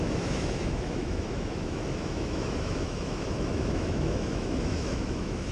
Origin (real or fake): fake